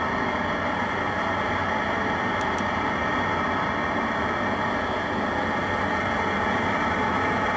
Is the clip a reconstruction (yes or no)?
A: no